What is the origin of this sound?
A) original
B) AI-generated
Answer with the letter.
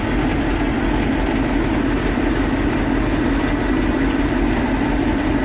A